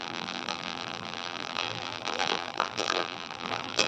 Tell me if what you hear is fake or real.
fake